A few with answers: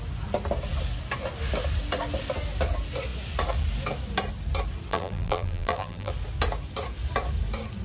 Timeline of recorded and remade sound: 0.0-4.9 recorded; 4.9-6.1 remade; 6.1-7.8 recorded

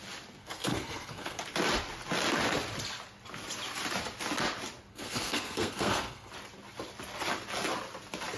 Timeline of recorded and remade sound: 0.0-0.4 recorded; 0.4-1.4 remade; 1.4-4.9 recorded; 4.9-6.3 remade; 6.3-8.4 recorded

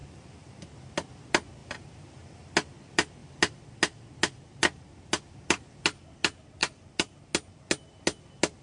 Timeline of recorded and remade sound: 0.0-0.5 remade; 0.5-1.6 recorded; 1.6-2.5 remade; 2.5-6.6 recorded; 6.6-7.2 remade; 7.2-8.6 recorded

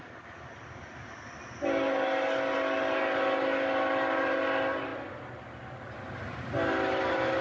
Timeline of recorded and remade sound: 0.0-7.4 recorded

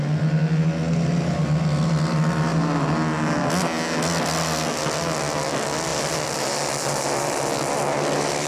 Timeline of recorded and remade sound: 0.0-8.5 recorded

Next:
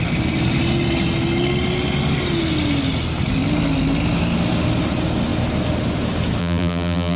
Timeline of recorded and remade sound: 0.0-6.4 recorded; 6.4-7.2 remade